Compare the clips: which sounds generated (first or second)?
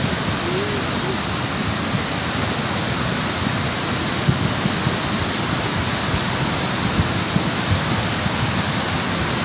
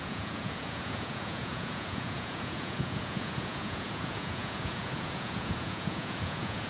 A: second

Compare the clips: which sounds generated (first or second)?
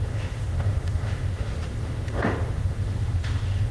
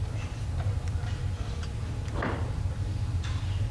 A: first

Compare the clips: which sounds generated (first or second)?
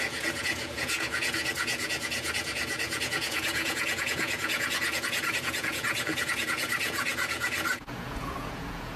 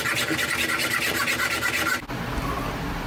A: first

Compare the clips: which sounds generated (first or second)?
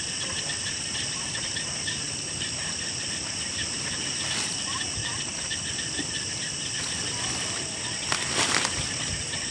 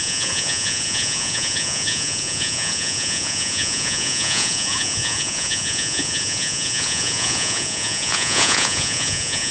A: second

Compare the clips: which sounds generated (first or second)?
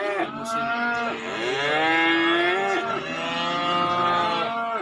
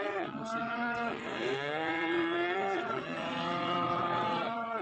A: second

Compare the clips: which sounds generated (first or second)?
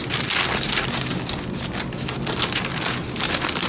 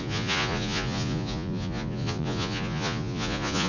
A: second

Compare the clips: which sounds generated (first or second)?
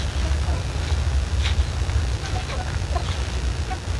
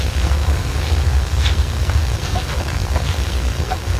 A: second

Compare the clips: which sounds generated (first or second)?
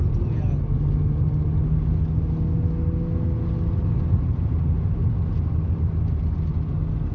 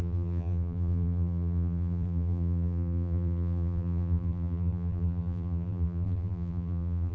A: second